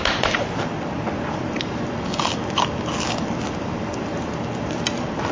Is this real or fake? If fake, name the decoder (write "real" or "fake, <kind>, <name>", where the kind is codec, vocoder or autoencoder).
real